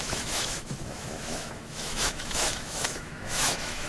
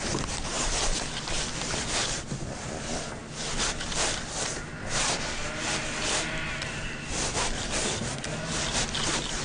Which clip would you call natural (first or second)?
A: second